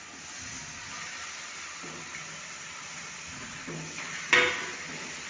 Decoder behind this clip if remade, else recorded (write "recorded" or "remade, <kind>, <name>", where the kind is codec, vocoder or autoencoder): recorded